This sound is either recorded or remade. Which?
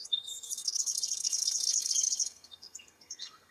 remade